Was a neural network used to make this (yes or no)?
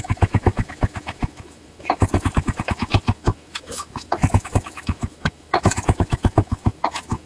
yes